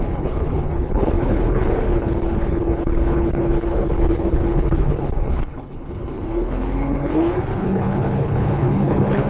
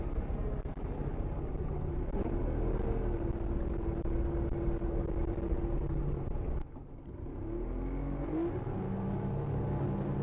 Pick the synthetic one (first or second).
first